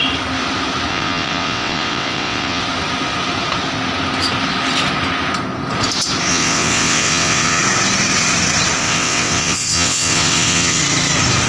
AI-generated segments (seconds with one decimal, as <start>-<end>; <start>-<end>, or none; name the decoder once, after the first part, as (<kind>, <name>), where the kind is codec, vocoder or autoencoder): 0.9-2.6 (vocoder, WaveNeXt); 6.3-7.6; 8.8-10.8